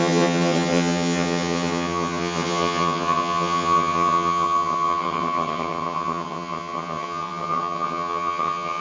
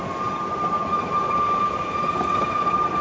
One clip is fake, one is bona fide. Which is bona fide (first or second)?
second